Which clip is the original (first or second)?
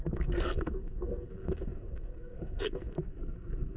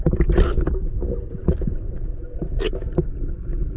second